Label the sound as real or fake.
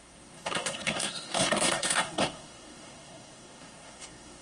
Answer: fake